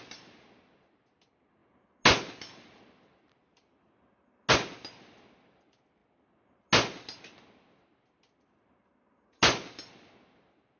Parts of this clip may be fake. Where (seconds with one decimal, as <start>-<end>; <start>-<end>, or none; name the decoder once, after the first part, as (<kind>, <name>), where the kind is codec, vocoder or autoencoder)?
none